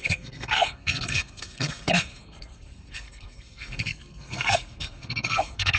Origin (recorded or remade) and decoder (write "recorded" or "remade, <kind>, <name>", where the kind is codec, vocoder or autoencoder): remade, codec, SNAC